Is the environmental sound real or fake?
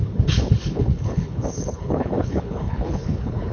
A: fake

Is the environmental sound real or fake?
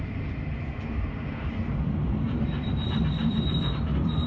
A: fake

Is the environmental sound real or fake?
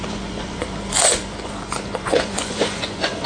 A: fake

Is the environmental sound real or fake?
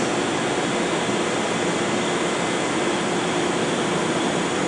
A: real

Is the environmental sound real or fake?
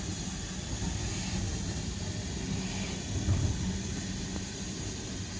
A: real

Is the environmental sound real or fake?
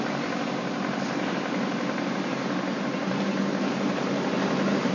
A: fake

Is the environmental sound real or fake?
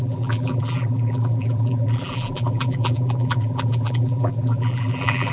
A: fake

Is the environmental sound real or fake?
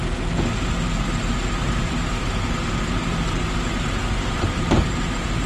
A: fake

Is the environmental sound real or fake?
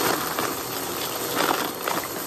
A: real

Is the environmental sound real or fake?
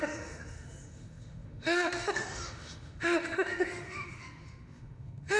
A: fake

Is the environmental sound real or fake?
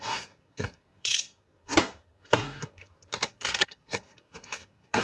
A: fake